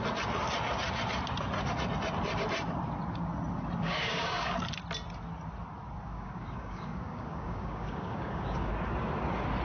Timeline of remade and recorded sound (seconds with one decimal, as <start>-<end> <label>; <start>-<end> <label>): 0.0-3.8 recorded; 3.8-4.6 remade; 4.6-6.1 recorded; 6.1-8.7 remade; 8.7-9.6 recorded